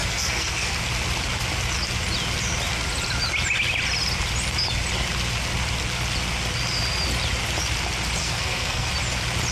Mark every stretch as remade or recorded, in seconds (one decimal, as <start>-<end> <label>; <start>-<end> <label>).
0.0-0.7 remade; 0.7-8.2 recorded; 8.2-8.9 remade; 8.9-9.5 recorded